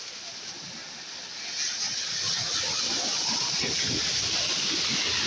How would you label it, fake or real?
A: real